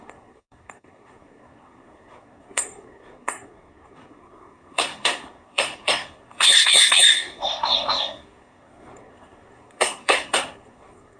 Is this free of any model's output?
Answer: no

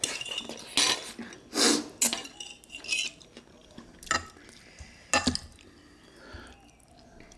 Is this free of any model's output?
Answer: yes